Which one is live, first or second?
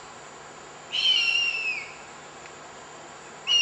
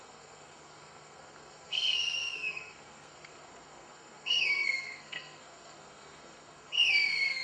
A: first